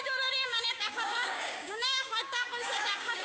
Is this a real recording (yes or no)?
no